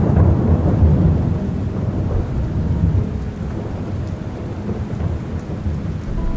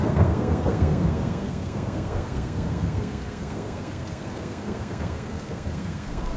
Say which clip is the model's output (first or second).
second